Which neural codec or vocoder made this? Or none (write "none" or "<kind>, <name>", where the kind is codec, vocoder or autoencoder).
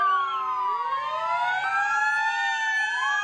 none